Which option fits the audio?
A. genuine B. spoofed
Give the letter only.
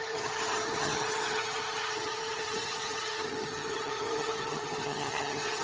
B